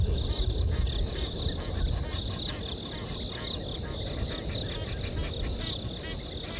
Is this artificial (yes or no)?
no